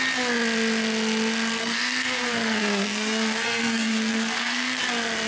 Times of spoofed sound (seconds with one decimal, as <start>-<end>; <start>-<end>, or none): 1.6-4.8